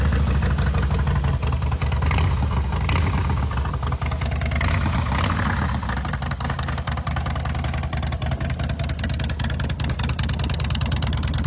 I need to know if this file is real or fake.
real